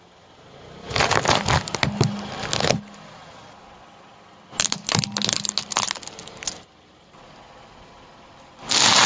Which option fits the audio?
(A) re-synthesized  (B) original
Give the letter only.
B